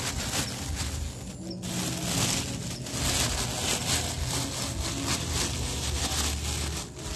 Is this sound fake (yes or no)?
no